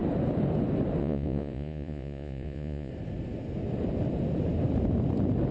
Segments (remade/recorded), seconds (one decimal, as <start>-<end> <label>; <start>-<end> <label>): 0.0-1.0 recorded; 1.0-2.9 remade; 2.9-5.5 recorded